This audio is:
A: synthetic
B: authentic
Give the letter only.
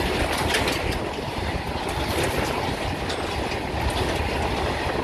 B